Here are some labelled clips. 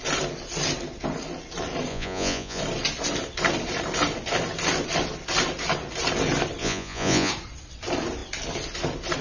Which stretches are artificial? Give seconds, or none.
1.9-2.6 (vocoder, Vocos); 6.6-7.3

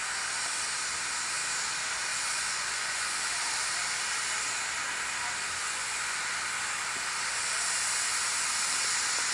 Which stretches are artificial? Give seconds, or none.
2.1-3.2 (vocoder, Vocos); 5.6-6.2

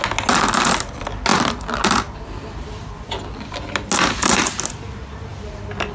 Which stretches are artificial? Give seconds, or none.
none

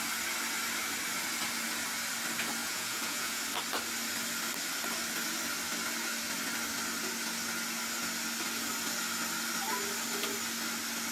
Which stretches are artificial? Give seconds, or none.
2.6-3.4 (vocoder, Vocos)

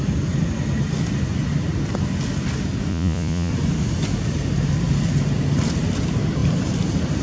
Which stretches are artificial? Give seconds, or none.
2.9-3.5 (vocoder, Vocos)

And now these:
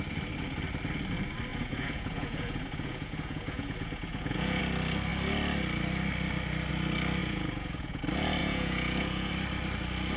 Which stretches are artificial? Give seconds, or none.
1.5-4.6 (vocoder, Vocos); 7.2-8.0; 8.4-9.3

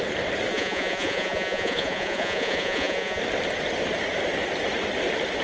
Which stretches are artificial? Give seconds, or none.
0.5-3.2 (vocoder, Vocos)